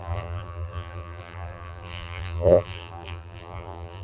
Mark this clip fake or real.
fake